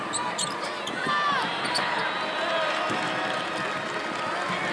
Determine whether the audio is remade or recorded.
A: recorded